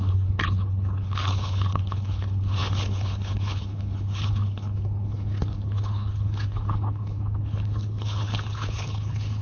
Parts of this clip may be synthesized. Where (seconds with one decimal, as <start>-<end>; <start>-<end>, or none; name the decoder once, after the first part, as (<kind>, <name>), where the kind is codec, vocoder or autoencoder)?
0.0-9.4 (codec, HILCodec)